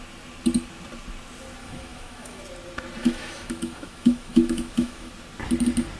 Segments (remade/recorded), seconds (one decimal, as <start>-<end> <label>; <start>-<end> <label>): 0.0-1.6 recorded; 1.6-2.4 remade; 2.4-3.0 recorded; 3.0-5.1 remade; 5.1-6.0 recorded